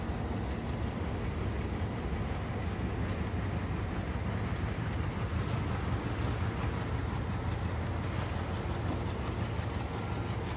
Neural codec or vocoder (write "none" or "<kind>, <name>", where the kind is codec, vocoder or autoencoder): none